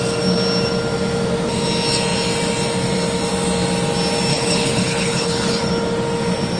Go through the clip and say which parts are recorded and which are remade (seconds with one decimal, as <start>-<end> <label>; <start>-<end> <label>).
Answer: 0.0-4.3 recorded; 4.3-5.7 remade; 5.7-6.6 recorded